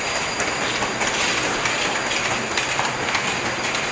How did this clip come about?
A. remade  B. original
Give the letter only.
B